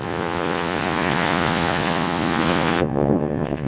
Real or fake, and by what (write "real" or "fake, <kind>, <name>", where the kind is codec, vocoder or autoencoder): fake, vocoder, Vocos